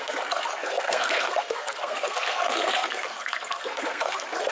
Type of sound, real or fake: fake